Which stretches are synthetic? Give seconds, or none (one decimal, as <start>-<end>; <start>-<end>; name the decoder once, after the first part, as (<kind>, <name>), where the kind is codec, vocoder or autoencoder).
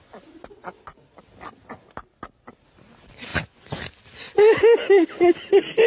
none